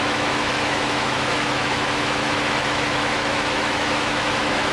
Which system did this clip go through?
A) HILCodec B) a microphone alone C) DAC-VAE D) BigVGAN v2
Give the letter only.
C